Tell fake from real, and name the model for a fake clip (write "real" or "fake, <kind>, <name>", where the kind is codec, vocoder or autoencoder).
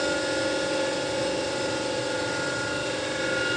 real